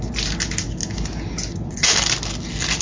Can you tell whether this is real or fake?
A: real